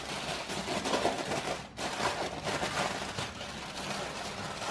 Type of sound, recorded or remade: recorded